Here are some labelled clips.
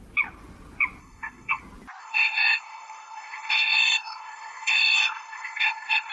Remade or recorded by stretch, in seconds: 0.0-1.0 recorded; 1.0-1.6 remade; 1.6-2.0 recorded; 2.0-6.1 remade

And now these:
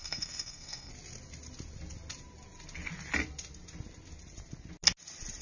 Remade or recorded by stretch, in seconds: 0.0-0.9 remade; 0.9-5.4 recorded

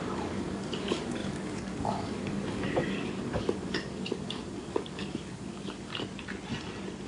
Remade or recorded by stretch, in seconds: 0.0-5.9 remade; 5.9-7.1 recorded

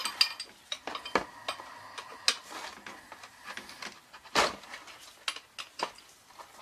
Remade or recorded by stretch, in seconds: 0.0-6.6 recorded

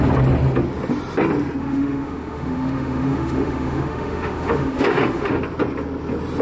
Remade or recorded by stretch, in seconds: 0.0-1.6 recorded; 1.6-5.4 remade; 5.4-6.4 recorded

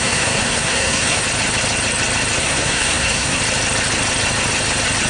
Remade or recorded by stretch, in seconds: 0.0-1.2 remade; 1.2-2.4 recorded; 2.4-3.4 remade; 3.4-5.1 recorded

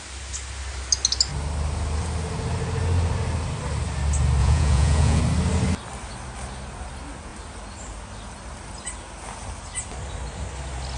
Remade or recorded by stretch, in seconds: 0.0-4.4 recorded; 4.4-5.2 remade; 5.2-11.0 recorded